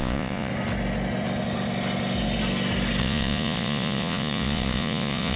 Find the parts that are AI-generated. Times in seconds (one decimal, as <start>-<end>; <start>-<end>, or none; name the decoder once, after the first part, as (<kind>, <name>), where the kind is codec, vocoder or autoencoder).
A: 0.0-0.5 (vocoder, Vocos); 3.0-5.4